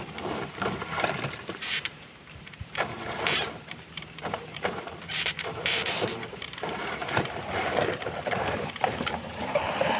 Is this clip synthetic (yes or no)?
yes